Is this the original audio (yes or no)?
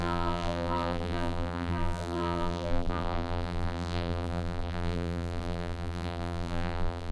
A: no